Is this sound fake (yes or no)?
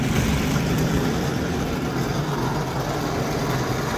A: no